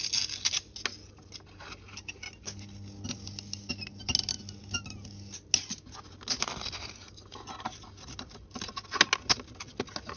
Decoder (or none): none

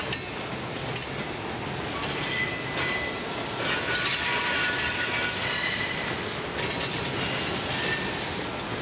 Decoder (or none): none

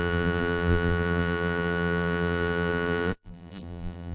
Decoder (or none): vocoder, BigVGAN v2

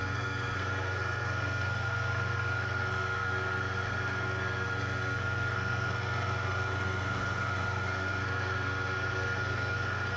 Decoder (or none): codec, SNAC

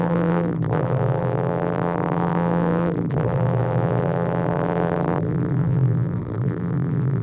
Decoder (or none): vocoder, BigVGAN v2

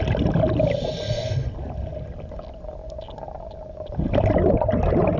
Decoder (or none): none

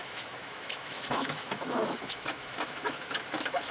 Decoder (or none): autoencoder, DAC-VAE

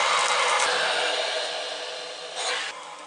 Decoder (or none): none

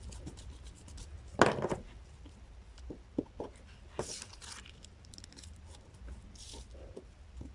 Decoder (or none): none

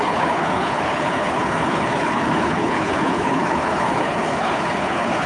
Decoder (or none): codec, HILCodec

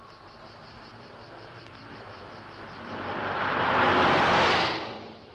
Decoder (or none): vocoder, BigVGAN v2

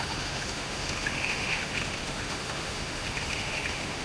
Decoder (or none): autoencoder, DAC-VAE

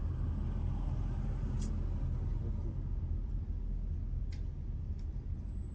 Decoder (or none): none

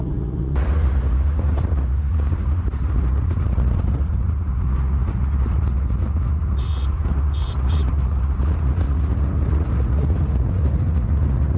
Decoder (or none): vocoder, Vocos